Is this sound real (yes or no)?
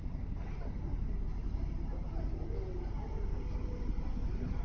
yes